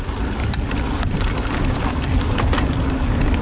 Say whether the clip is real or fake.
real